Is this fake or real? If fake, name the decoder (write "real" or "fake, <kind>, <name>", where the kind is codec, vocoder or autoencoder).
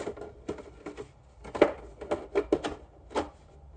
real